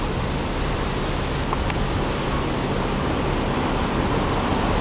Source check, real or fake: real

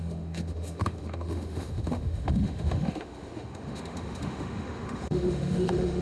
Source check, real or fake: fake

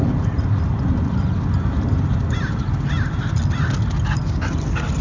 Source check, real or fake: real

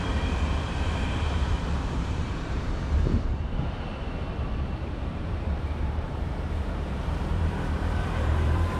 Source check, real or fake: fake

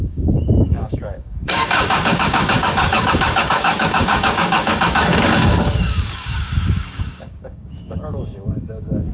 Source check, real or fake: fake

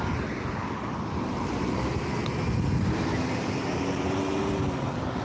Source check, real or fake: real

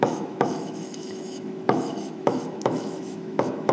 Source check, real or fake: fake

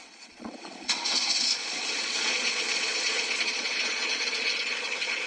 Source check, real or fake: fake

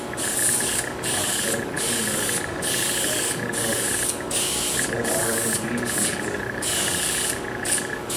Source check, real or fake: fake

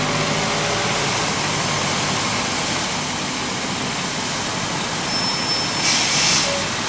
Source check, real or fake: real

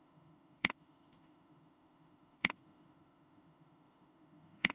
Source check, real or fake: fake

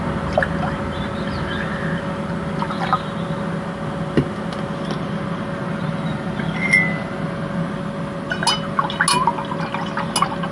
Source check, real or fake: real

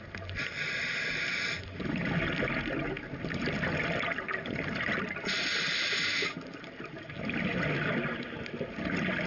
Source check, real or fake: real